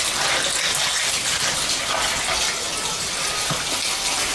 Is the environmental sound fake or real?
real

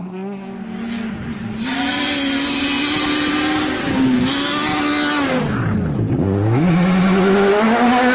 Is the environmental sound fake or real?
real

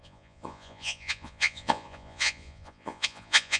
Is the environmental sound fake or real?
fake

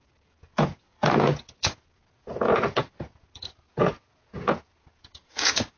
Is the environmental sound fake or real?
fake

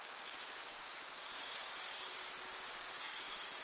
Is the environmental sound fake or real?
fake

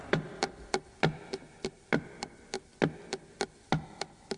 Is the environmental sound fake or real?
real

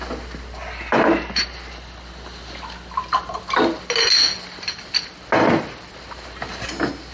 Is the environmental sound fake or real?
real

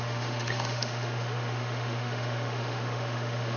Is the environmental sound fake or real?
fake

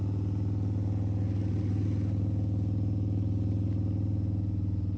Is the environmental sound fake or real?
real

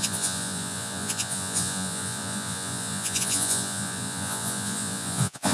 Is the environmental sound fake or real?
fake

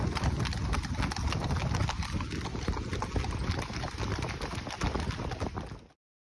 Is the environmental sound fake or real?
real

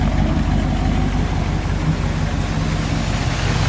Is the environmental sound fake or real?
real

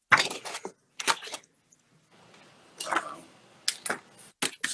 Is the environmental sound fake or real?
real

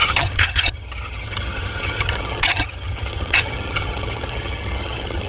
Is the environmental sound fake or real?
fake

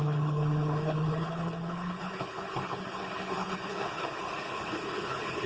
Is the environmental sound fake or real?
fake